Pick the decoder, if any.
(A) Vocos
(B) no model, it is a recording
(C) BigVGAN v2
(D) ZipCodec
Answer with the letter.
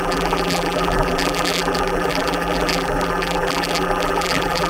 C